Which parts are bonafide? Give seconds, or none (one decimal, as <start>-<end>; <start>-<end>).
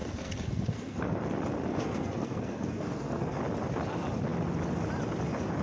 1.2-1.7; 3.4-5.6